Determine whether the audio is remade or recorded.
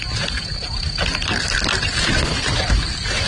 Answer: recorded